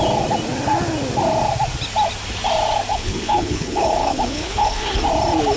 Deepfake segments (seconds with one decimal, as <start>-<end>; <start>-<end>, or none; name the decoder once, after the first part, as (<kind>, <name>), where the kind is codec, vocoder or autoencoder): 2.9-5.0 (codec, HILCodec)